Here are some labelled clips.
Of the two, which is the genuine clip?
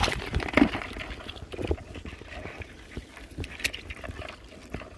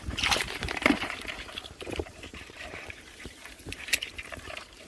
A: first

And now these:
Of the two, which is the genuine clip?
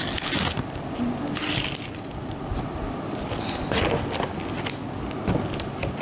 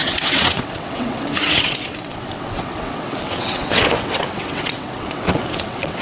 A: first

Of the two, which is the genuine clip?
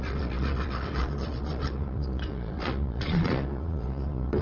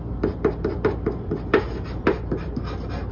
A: second